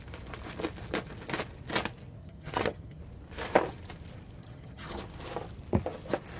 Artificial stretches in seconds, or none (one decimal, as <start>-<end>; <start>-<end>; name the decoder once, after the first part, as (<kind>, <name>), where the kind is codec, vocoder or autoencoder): 2.2-3.0 (vocoder, HiFi-GAN); 4.4-5.0